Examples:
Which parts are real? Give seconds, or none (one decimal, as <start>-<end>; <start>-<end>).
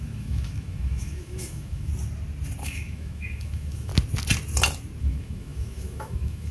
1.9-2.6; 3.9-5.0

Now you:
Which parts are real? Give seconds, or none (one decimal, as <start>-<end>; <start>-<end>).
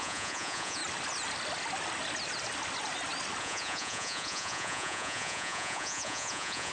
0.8-3.4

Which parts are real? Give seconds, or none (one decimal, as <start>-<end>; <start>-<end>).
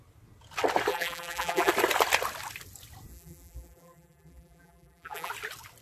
0.0-0.9; 1.7-3.1; 5.3-5.8